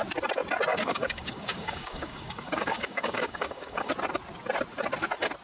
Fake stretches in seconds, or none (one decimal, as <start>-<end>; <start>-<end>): 0.7-3.9